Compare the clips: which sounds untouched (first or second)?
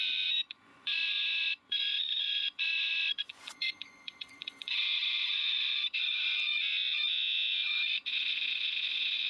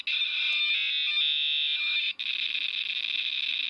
second